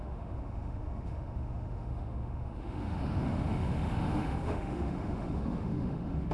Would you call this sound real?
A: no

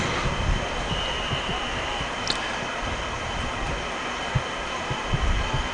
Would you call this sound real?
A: yes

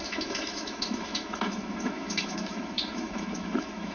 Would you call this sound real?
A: no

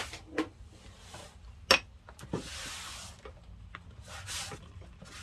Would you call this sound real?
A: yes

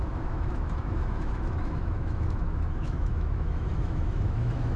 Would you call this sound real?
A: no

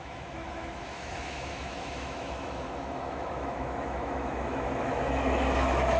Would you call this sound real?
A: no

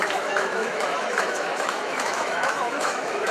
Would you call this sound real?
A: no